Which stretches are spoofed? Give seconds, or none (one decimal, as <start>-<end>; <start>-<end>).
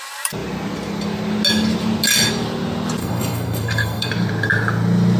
3.0-4.1